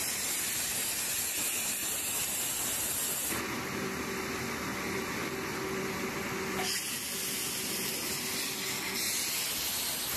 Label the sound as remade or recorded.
recorded